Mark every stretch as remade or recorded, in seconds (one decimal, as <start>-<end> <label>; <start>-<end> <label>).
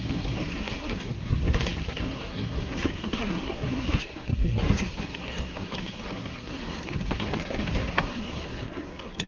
0.0-9.3 remade